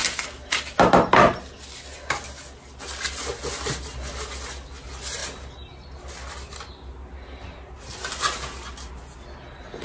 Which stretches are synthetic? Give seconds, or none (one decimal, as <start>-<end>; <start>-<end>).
none